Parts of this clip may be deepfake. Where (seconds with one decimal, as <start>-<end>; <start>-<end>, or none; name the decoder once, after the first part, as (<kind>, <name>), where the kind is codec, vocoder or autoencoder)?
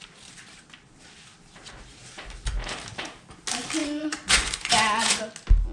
3.8-5.2 (vocoder, Vocos)